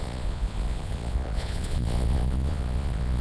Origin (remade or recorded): remade